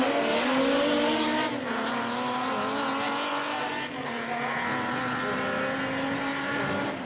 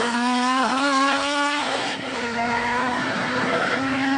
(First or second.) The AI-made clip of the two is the second